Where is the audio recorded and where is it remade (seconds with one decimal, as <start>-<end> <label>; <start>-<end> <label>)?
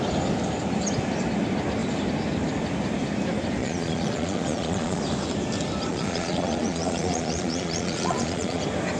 0.0-3.6 recorded; 3.6-5.0 remade; 5.0-5.9 recorded; 5.9-8.6 remade; 8.6-9.0 recorded